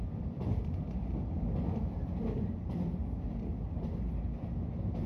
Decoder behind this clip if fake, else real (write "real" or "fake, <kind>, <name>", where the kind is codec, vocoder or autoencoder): real